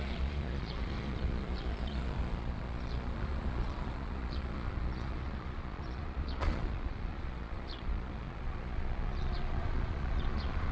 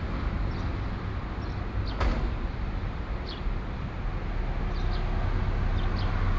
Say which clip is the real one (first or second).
second